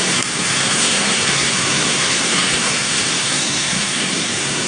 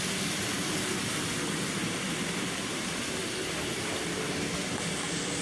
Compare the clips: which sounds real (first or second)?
second